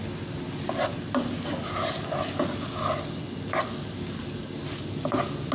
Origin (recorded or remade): recorded